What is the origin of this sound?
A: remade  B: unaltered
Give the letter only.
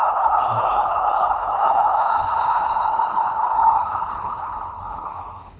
A